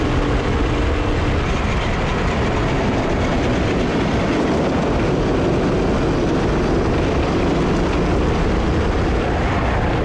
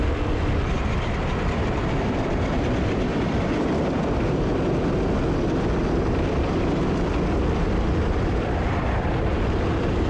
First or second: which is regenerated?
second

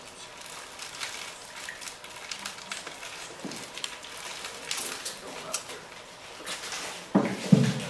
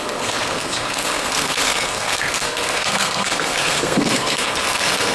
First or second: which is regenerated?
second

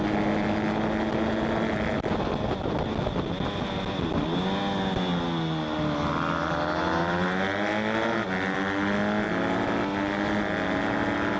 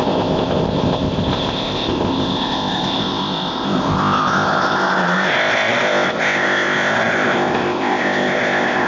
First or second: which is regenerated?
second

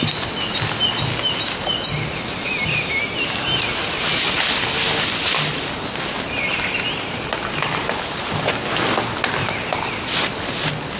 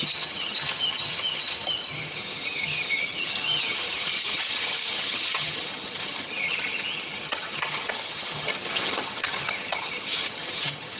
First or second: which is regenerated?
second